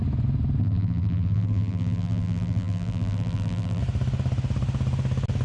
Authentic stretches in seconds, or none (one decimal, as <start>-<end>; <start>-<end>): 0.0-0.6; 3.8-5.4